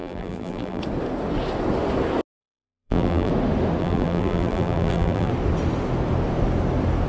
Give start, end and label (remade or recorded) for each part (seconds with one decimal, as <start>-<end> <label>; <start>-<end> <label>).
0.0-0.8 remade; 0.8-2.4 recorded; 2.4-3.3 remade; 3.3-3.8 recorded; 3.8-5.3 remade; 5.3-7.1 recorded